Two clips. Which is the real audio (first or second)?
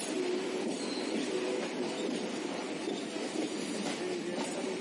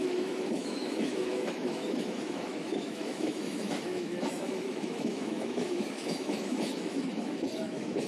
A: first